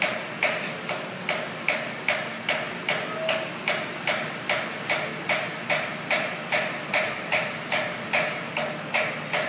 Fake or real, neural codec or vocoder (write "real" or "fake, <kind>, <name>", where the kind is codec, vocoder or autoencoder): real